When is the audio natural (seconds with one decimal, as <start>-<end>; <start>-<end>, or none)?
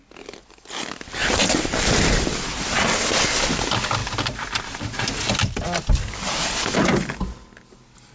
0.0-8.1